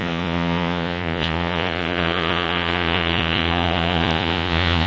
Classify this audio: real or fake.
fake